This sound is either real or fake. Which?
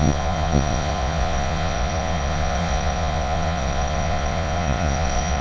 fake